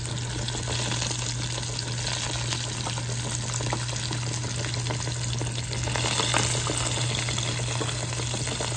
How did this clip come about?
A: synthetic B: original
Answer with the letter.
B